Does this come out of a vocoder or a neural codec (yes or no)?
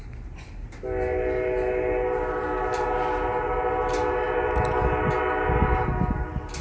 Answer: no